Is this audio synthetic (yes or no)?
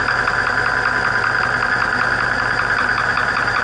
no